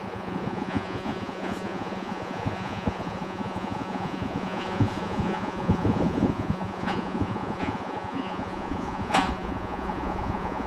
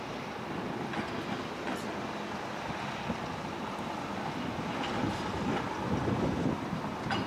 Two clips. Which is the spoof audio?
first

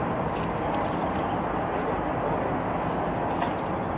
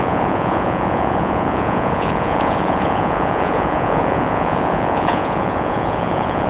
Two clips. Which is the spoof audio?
second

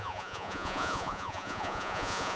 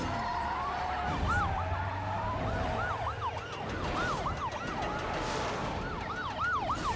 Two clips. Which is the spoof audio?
first